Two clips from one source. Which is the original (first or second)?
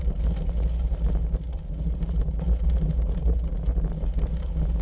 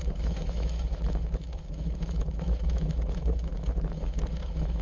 first